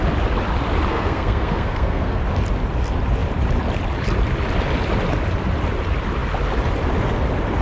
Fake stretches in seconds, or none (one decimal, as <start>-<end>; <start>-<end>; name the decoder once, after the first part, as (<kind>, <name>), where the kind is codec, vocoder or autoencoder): 0.9-2.2 (codec, SNAC)